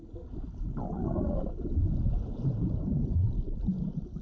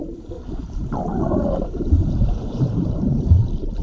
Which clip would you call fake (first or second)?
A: second